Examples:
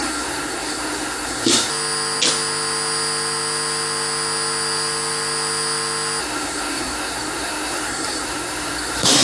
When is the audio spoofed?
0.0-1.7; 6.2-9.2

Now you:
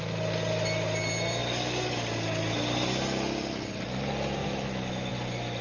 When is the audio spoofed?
4.4-5.1

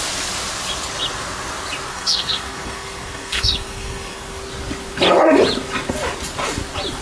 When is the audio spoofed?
1.9-4.4

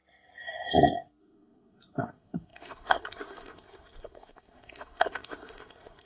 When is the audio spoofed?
1.2-6.1